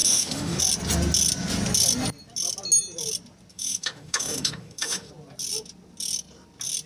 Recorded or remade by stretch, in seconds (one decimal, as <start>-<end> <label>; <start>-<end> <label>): 0.0-0.6 remade; 0.6-3.5 recorded; 3.5-5.1 remade; 5.1-6.9 recorded